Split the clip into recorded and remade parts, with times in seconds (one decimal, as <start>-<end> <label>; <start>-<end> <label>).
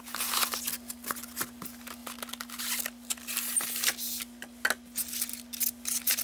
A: 0.0-6.2 recorded